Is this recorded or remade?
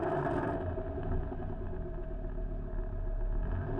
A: recorded